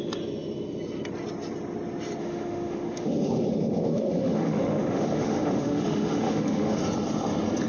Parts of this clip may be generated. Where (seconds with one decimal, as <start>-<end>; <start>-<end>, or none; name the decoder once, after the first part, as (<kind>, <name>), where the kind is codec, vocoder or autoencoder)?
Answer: 2.2-6.8 (autoencoder, DAC-VAE)